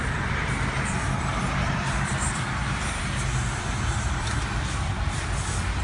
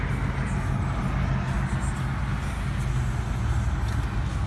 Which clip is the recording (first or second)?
second